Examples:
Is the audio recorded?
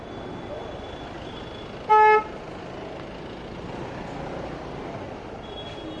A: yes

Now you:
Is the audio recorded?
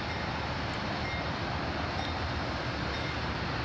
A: yes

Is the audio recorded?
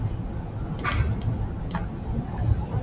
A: yes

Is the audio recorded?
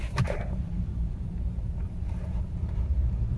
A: no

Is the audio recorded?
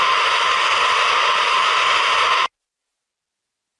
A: yes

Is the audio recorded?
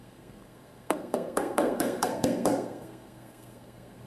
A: no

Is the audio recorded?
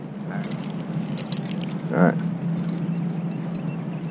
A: yes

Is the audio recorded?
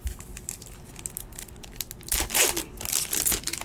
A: yes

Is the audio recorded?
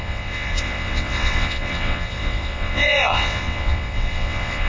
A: no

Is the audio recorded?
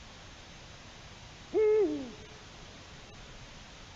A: yes